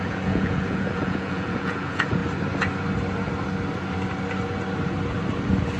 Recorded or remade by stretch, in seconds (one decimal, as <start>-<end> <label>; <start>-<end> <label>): 0.0-2.2 remade; 2.2-5.8 recorded